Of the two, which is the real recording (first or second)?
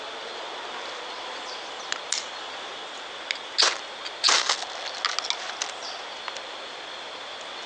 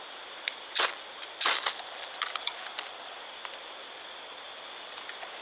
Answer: first